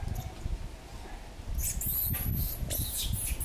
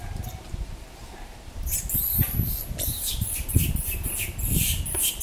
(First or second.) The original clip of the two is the first